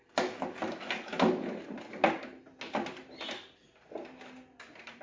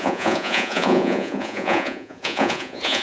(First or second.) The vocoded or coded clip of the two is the second